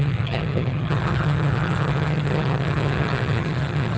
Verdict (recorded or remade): remade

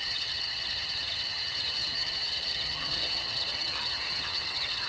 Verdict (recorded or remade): remade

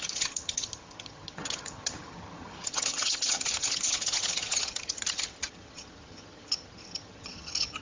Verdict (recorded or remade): remade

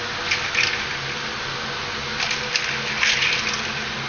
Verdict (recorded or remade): recorded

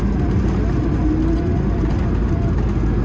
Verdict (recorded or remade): recorded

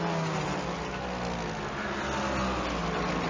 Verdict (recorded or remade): recorded